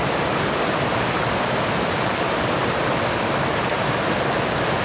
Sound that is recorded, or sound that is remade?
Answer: recorded